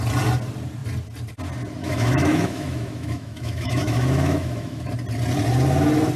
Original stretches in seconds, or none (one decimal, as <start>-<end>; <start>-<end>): 0.0-1.8; 4.9-6.2